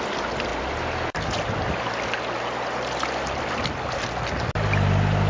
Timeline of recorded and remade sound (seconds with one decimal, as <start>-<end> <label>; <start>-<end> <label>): 0.0-5.3 recorded